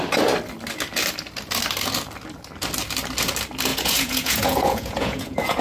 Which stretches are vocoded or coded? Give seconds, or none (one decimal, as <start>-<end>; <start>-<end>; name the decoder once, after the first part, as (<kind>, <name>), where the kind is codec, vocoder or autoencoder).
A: 3.7-5.6 (vocoder, Vocos)